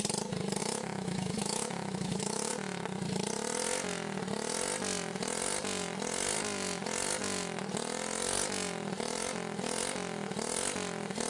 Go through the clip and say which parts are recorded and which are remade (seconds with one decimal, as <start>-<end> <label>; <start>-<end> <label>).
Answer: 0.0-0.6 recorded; 0.6-2.5 remade; 2.5-11.3 recorded